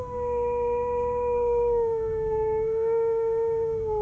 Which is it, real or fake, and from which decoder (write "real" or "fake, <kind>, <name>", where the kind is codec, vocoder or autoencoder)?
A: fake, autoencoder, DAC-VAE